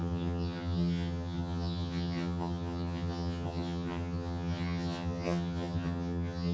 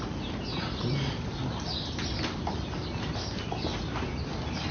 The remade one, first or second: first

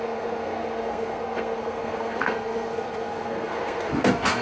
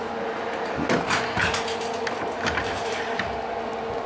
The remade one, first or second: first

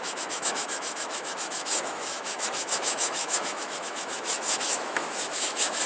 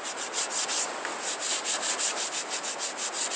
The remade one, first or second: first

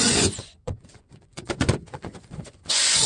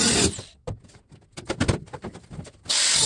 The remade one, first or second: first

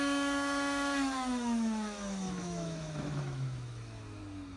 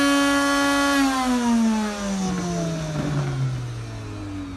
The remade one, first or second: first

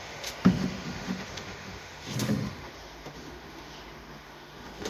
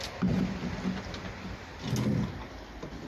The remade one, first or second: first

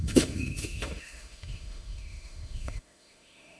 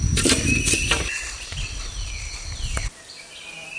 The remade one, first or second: first